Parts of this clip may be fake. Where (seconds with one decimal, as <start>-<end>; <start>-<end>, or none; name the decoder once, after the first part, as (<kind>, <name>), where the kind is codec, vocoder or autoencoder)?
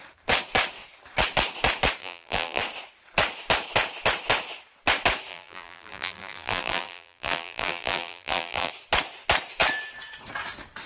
2.0-2.6 (vocoder, BigVGAN v2); 5.3-8.7